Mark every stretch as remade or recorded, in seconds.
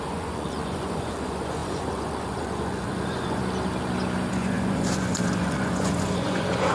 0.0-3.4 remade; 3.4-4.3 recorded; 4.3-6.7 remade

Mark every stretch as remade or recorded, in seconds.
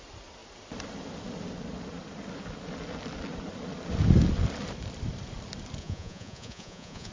0.0-5.8 recorded; 5.8-7.1 remade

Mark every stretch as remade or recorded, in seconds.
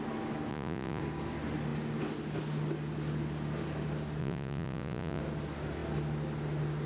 0.0-0.5 recorded; 0.5-1.0 remade; 1.0-4.2 recorded; 4.2-5.2 remade; 5.2-6.9 recorded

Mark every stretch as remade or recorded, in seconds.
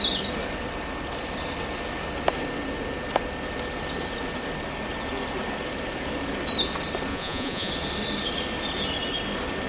0.0-7.1 recorded; 7.1-7.7 remade; 7.7-9.7 recorded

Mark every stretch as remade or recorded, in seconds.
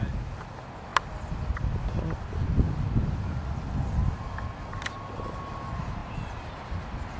0.0-7.2 recorded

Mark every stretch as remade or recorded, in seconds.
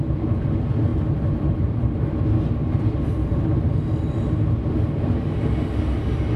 0.0-6.4 recorded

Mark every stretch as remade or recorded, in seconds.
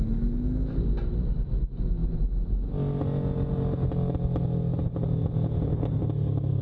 0.0-6.6 recorded